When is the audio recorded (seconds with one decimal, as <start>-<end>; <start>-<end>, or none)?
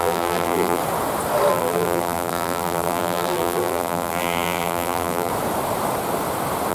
0.8-1.5; 5.3-6.7